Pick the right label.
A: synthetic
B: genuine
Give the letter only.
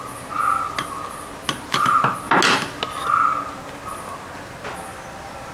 B